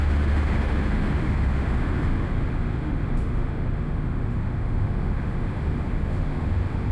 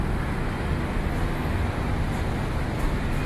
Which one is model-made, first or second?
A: first